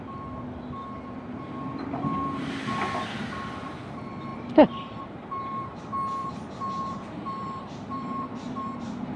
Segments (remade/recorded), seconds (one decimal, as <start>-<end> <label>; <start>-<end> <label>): 0.0-4.3 recorded; 4.3-5.8 remade; 5.8-6.2 recorded; 6.2-9.2 remade